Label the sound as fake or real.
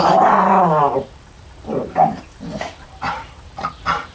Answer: fake